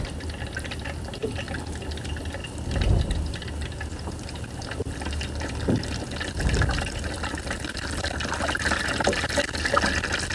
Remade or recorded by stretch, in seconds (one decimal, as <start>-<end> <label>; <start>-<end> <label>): 0.0-10.3 recorded